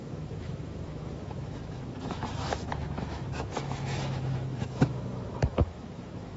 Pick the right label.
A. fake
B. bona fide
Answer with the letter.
A